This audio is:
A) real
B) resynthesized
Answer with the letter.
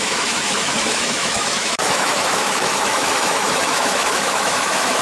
B